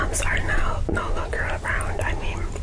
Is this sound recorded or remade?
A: recorded